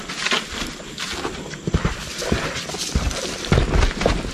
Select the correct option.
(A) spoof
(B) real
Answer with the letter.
B